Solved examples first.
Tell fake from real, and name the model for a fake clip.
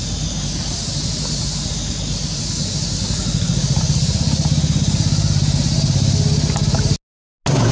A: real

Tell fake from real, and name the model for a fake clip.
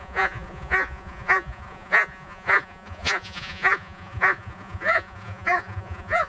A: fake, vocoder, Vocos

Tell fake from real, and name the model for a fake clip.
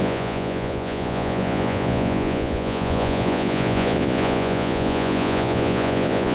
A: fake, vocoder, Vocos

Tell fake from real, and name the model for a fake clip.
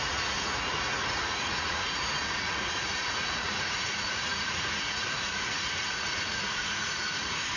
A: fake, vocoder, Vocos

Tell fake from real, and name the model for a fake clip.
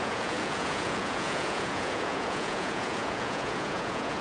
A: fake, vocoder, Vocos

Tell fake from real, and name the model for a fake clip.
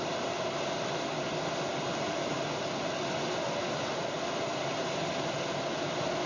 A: real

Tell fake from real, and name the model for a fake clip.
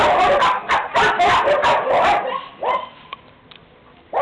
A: real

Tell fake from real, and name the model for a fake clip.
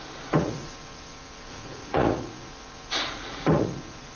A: fake, vocoder, Vocos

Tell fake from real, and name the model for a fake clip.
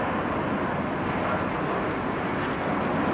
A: real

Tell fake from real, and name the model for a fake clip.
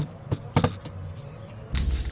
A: real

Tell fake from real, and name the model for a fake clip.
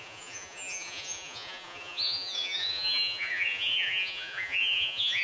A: fake, vocoder, Vocos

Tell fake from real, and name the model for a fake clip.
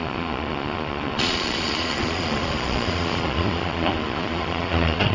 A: fake, vocoder, Vocos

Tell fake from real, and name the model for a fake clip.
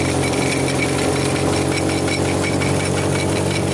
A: real